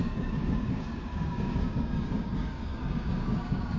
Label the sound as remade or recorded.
remade